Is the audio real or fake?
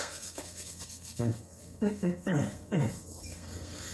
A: fake